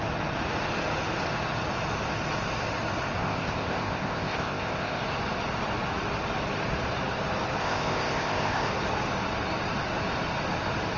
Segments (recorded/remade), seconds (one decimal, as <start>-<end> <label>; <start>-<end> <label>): 0.0-3.2 recorded; 3.2-5.0 remade; 5.0-7.6 recorded; 7.6-8.7 remade; 8.7-11.0 recorded